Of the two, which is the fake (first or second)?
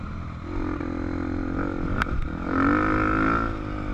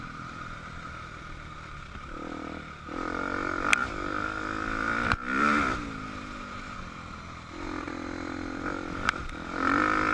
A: second